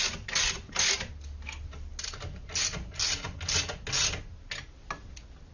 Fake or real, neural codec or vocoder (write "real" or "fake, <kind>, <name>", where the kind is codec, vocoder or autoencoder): real